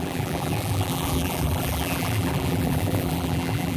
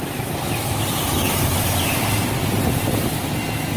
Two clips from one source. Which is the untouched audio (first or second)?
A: second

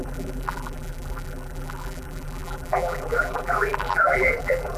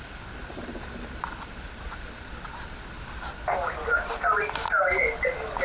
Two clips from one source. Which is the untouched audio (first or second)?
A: second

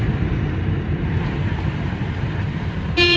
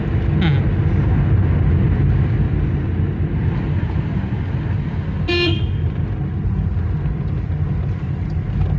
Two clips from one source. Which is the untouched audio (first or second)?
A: second